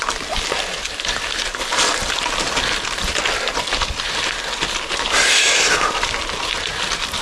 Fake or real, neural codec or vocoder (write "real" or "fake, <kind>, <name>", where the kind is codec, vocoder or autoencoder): real